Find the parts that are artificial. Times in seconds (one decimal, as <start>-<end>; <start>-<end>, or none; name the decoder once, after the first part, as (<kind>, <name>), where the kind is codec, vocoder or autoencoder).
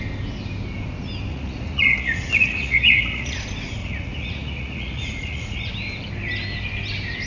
1.3-3.4 (vocoder, Vocos); 3.8-5.7